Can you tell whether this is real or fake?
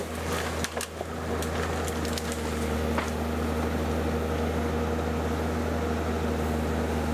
real